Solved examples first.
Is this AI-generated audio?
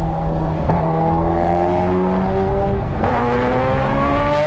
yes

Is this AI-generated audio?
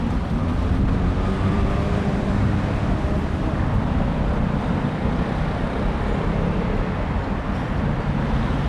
yes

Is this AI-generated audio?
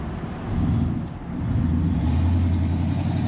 no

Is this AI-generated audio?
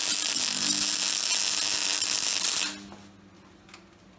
no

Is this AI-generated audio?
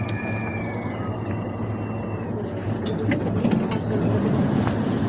no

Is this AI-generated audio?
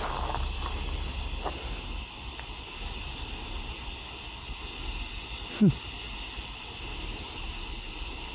no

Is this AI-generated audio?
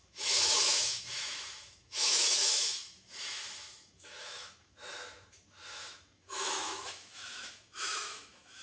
yes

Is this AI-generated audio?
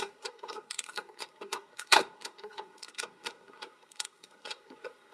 yes